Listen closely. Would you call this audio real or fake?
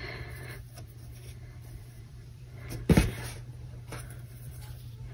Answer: fake